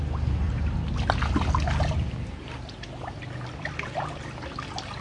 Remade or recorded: recorded